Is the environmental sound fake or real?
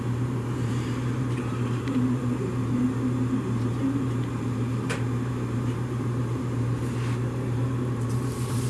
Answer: fake